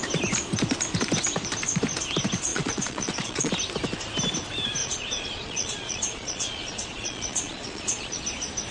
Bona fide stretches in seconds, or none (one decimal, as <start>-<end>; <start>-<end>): 0.0-2.5; 3.5-4.8; 8.2-8.7